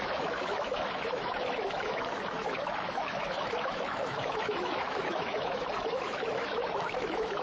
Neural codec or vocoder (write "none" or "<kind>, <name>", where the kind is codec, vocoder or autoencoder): autoencoder, DAC-VAE